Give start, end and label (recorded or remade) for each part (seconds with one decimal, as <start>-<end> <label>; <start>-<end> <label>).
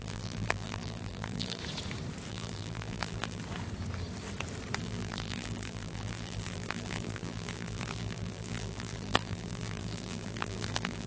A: 0.0-1.6 remade; 1.6-2.3 recorded; 2.3-3.4 remade; 3.4-4.8 recorded; 4.8-11.1 remade